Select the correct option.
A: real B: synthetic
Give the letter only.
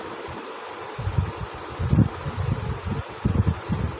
A